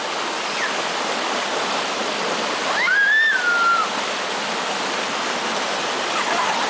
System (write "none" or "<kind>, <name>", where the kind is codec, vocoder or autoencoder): none